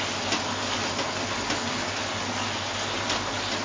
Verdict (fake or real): real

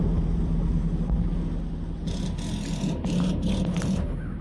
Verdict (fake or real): real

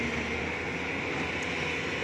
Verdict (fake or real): real